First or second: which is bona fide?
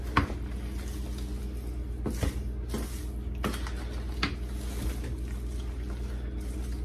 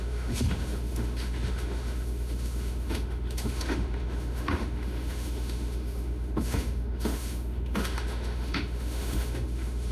first